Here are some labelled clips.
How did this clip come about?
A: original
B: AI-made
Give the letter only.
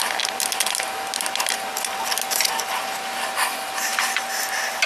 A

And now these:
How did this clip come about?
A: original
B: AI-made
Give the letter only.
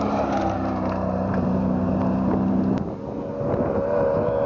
A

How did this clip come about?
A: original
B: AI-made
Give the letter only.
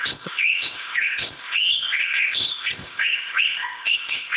B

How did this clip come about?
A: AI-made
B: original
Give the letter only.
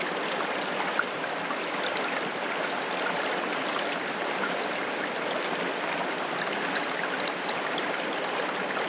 B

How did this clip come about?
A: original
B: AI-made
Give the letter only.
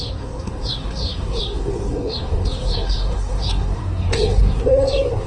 B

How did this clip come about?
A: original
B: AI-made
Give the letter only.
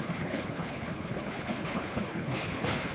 B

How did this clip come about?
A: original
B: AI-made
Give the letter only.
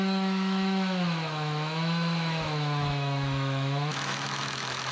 B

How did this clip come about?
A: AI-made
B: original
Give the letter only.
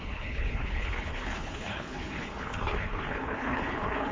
A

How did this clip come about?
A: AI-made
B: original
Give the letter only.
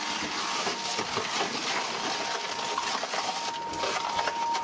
B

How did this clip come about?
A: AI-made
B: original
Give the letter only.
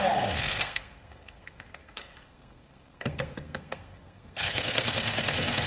A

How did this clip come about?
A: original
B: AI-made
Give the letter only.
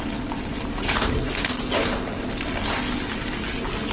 A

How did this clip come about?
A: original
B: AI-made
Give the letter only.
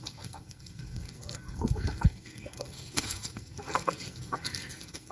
B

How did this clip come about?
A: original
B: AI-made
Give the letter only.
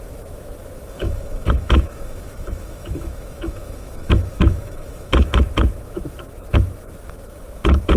B